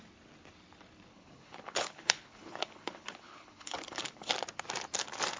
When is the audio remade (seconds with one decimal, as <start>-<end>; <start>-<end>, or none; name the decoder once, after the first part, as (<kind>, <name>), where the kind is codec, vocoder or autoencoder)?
1.1-4.3 (codec, HILCodec)